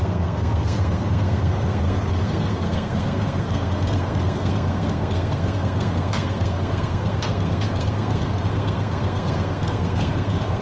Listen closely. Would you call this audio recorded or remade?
remade